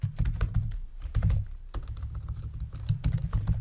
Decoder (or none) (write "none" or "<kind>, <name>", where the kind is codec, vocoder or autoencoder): vocoder, BigVGAN v2